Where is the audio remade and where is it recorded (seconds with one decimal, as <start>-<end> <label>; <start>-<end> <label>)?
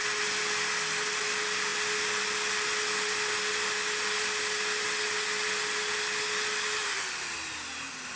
0.0-8.2 recorded